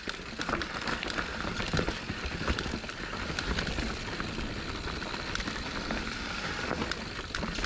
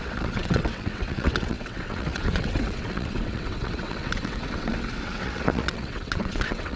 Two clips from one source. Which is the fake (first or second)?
second